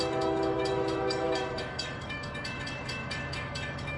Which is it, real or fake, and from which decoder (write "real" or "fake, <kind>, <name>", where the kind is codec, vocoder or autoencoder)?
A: fake, autoencoder, DAC-VAE